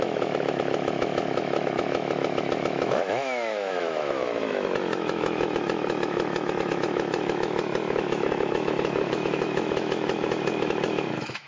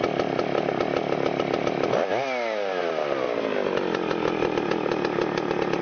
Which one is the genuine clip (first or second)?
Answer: second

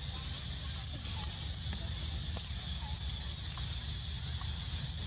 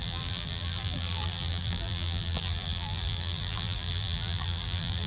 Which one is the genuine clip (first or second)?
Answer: first